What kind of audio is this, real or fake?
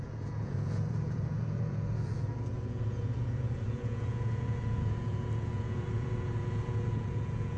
fake